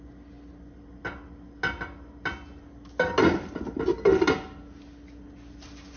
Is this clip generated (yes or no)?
no